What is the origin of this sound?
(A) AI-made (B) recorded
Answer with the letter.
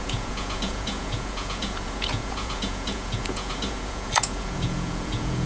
A